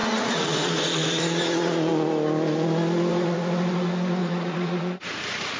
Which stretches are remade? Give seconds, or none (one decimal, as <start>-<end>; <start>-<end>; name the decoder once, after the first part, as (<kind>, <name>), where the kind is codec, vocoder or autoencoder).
0.0-1.2 (vocoder, Vocos); 4.2-5.6